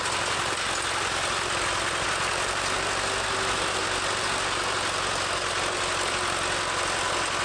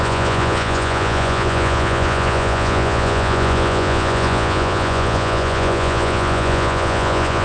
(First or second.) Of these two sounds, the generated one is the second